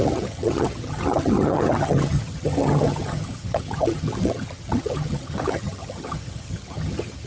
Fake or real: fake